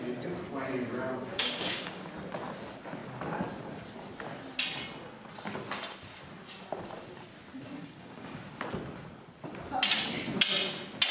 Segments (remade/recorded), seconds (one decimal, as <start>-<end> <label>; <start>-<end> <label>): 0.0-1.3 recorded; 1.3-2.1 remade; 2.1-7.8 recorded; 7.8-8.4 remade; 8.4-11.1 recorded